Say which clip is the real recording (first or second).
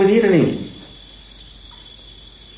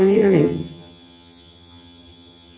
first